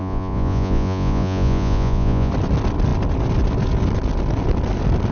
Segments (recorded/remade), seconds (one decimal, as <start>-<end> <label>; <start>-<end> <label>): 0.0-2.3 remade; 2.3-5.1 recorded